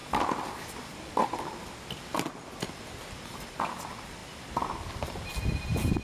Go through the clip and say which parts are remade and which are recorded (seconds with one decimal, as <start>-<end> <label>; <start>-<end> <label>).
0.0-6.0 recorded